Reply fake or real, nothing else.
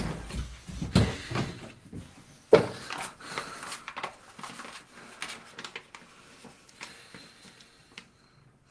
real